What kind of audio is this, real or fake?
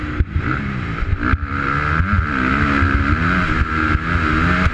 real